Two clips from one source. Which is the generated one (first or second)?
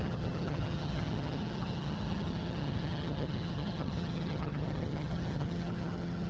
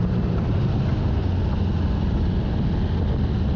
first